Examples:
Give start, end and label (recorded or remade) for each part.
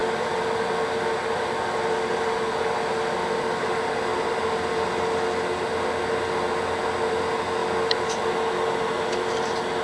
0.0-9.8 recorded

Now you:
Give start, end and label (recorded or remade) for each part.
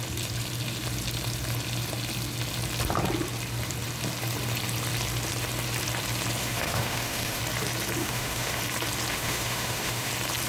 0.0-6.4 recorded; 6.4-7.4 remade; 7.4-8.0 recorded; 8.0-8.6 remade; 8.6-9.1 recorded; 9.1-10.1 remade; 10.1-10.5 recorded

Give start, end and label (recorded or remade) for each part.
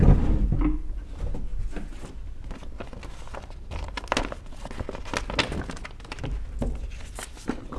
0.0-7.8 recorded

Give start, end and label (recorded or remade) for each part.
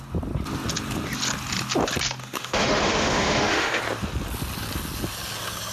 0.0-2.2 recorded; 2.2-3.8 remade; 3.8-5.7 recorded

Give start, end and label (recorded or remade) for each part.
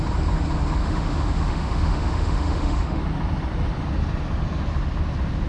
0.0-0.8 recorded; 0.8-3.0 remade; 3.0-5.5 recorded